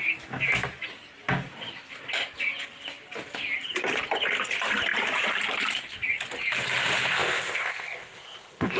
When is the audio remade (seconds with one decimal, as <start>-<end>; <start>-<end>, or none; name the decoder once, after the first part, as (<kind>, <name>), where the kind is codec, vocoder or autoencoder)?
7.1-8.8 (codec, ZipCodec)